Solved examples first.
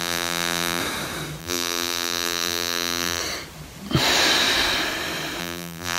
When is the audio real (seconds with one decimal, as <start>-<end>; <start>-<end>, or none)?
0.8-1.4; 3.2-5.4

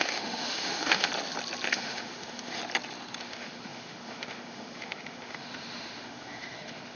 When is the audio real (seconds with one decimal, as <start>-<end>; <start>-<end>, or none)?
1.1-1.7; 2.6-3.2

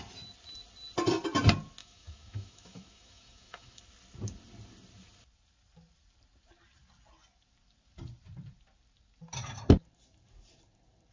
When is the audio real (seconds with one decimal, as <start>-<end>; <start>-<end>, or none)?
0.0-1.8; 3.8-11.1